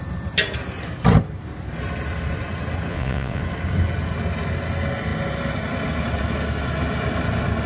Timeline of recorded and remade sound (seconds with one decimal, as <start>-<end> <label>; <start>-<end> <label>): 0.0-2.9 recorded; 2.9-3.4 remade; 3.4-7.7 recorded